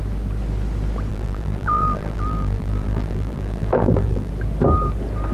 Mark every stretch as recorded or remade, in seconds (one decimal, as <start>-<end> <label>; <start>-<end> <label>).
0.0-1.1 recorded; 1.1-4.3 remade; 4.3-5.3 recorded